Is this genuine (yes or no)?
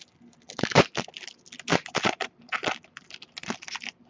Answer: yes